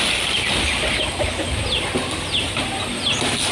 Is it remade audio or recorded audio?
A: recorded